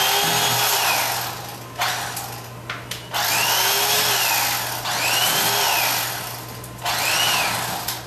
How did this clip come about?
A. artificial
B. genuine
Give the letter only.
B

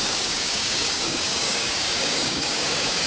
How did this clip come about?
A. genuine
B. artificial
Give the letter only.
B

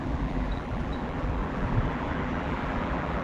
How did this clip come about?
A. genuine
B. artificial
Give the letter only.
B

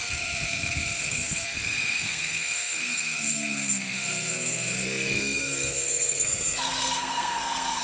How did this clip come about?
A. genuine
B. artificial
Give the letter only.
B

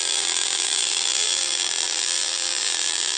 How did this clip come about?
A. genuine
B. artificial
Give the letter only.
B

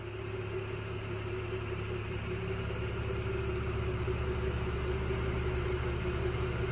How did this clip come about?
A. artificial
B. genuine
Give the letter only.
B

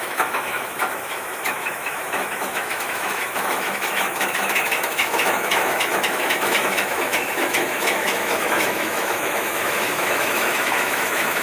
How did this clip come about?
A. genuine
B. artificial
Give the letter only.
B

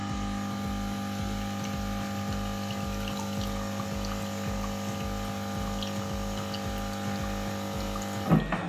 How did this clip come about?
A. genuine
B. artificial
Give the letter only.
A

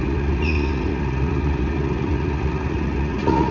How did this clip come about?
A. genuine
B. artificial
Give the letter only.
B